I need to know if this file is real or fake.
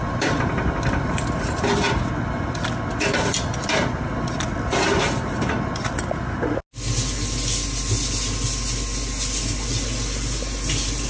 real